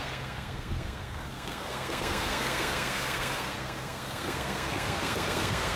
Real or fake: fake